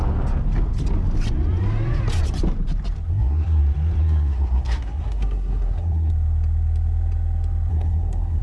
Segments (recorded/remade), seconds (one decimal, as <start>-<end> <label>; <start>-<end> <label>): 0.0-3.1 recorded; 3.1-3.6 remade; 3.6-4.0 recorded; 4.0-6.1 remade; 6.1-7.7 recorded; 7.7-8.4 remade